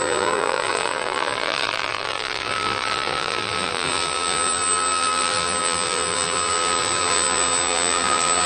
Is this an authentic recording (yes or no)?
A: no